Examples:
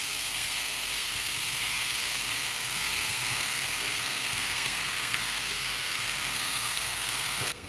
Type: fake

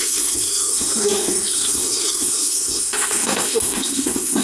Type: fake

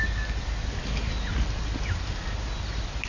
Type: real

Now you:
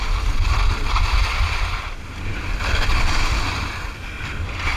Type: real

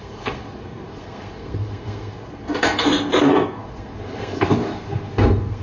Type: fake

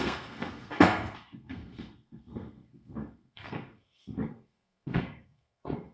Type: fake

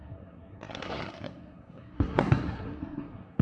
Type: fake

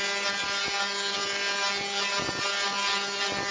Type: real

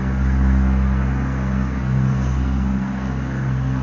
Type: fake